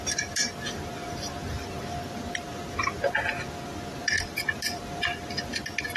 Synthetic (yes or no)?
no